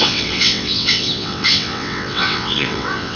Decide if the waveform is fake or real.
fake